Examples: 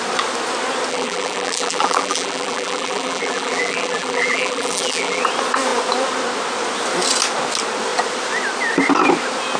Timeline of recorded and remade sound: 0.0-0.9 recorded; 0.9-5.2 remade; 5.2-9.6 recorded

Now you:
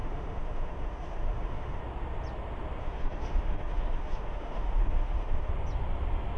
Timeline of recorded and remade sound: 0.0-1.8 remade; 1.8-2.8 recorded; 2.8-5.5 remade; 5.5-6.4 recorded

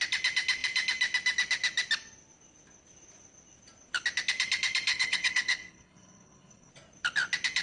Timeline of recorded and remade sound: 0.0-4.9 recorded; 4.9-6.7 remade; 6.7-7.6 recorded

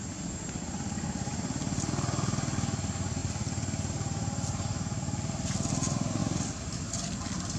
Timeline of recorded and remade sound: 0.0-7.6 recorded

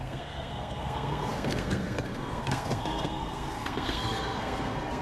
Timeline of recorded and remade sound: 0.0-5.0 remade

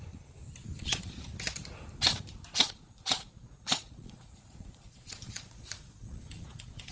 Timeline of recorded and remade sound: 0.0-0.6 recorded; 0.6-1.1 remade; 1.1-2.6 recorded; 2.6-6.9 remade

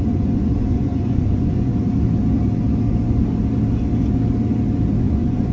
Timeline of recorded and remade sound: 0.0-1.7 remade; 1.7-5.0 recorded; 5.0-5.5 remade